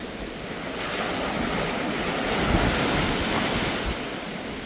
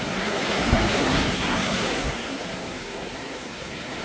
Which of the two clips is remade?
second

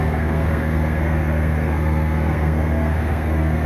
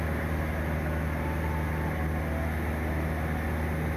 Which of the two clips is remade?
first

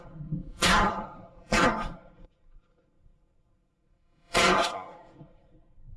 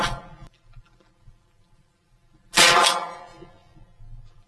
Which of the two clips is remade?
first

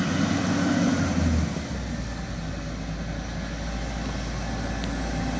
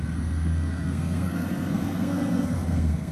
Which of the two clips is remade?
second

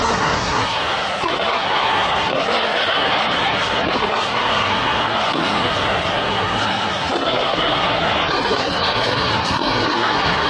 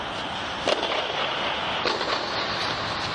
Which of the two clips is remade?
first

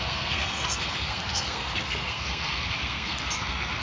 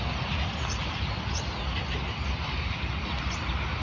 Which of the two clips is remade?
first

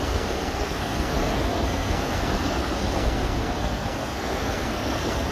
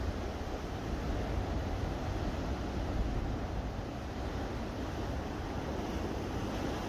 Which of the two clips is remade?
first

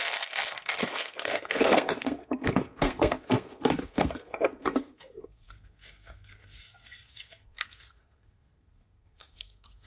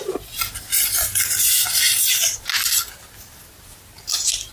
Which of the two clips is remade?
first